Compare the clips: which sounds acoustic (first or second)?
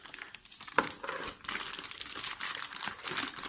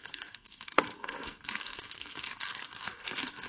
first